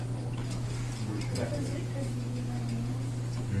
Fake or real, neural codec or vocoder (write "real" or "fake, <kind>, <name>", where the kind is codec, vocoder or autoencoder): real